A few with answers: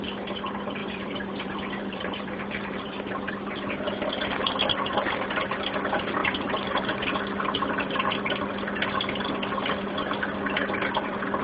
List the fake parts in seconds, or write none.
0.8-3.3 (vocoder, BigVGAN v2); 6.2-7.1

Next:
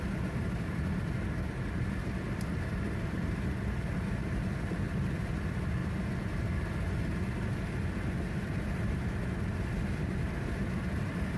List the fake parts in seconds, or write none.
none

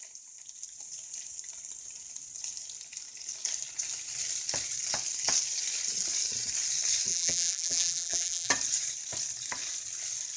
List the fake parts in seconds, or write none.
7.1-8.5 (vocoder, BigVGAN v2)

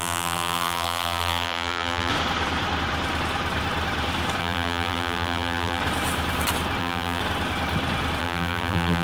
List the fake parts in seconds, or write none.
0.0-2.1 (vocoder, BigVGAN v2); 4.4-5.8; 6.8-7.2; 8.2-9.0

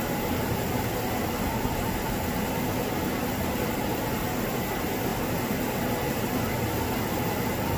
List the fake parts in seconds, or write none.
3.2-3.9 (vocoder, BigVGAN v2)

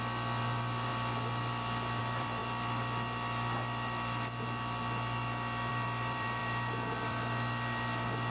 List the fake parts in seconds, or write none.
0.0-0.9 (vocoder, BigVGAN v2); 2.0-2.4; 5.7-6.4; 6.9-8.3